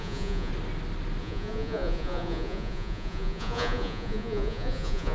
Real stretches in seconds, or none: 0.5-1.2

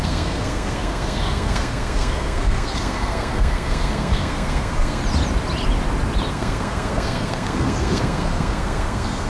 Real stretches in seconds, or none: 5.0-6.3

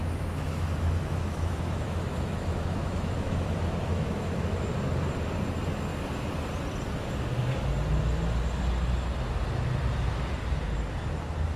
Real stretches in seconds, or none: 4.7-11.6

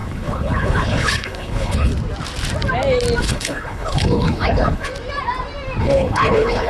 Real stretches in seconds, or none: 1.9-3.2; 4.9-5.8

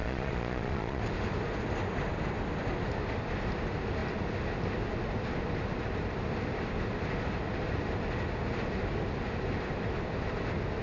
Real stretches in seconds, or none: 1.0-10.8

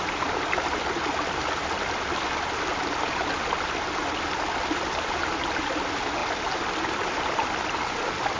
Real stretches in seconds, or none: 0.0-8.4

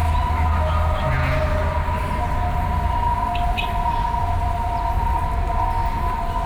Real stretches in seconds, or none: 0.0-6.5